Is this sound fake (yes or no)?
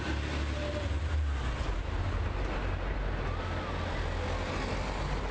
no